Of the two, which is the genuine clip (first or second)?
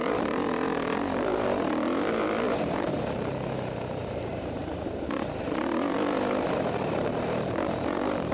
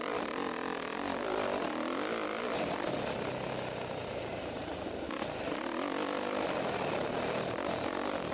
second